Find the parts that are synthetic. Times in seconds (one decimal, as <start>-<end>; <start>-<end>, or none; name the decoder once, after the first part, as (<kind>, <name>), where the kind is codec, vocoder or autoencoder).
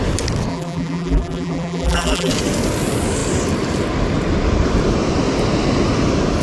0.5-2.3 (vocoder, BigVGAN v2)